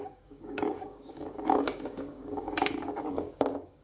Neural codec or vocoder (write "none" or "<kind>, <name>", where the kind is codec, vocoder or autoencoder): codec, DAC